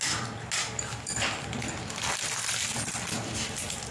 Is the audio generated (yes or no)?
no